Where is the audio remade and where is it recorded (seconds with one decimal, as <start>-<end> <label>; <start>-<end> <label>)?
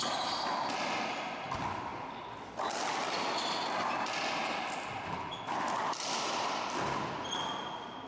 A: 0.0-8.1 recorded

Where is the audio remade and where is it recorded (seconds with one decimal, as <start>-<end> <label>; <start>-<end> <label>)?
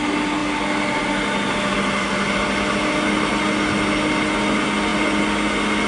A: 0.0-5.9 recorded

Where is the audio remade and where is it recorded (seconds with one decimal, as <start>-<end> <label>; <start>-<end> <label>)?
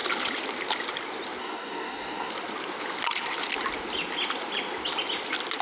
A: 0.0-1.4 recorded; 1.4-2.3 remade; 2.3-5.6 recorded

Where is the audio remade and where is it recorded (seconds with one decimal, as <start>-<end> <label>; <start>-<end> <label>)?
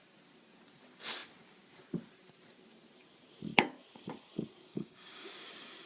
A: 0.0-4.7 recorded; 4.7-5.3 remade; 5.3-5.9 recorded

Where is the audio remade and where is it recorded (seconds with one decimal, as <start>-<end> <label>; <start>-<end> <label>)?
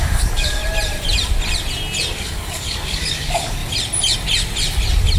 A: 0.0-0.6 remade; 0.6-2.1 recorded; 2.1-3.6 remade; 3.6-5.2 recorded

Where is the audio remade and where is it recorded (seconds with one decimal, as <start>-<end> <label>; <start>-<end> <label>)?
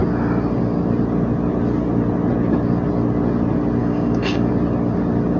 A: 0.0-3.8 recorded; 3.8-4.5 remade; 4.5-5.4 recorded